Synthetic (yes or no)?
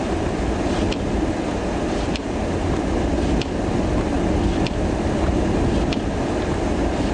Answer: no